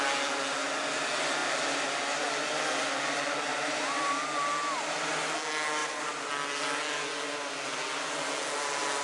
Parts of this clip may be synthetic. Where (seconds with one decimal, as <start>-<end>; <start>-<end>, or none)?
3.5-4.1; 5.8-6.3